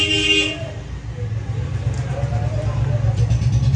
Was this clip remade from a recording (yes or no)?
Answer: no